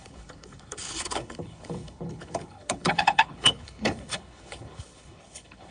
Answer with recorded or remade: remade